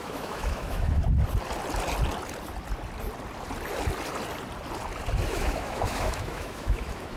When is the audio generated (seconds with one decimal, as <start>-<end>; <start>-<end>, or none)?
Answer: 0.0-1.0; 5.3-7.2